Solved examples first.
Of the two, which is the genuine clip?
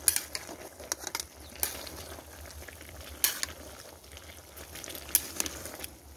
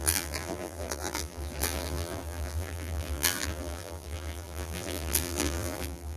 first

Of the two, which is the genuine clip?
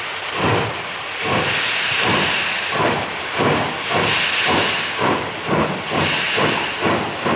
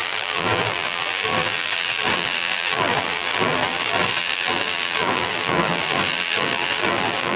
first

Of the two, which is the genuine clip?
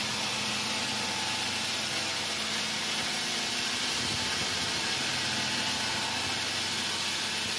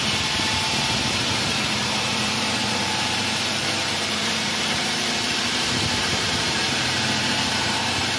first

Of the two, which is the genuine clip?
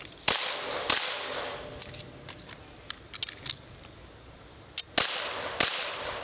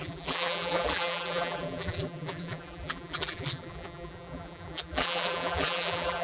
first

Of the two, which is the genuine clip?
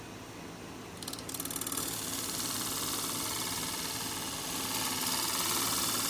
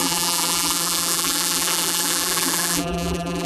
first